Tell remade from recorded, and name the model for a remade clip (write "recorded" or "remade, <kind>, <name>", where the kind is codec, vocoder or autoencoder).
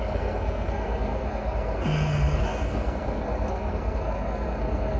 remade, codec, SNAC